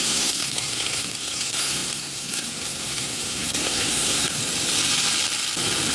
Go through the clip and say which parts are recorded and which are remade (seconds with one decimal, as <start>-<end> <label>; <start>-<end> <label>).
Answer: 0.0-4.4 remade; 4.4-5.9 recorded